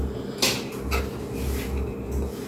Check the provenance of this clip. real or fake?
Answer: real